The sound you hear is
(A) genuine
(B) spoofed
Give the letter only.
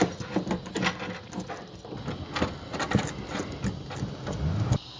A